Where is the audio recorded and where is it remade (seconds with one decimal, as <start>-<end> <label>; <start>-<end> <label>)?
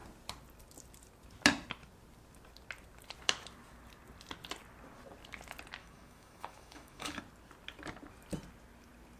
0.0-5.8 recorded; 5.8-7.2 remade; 7.2-9.2 recorded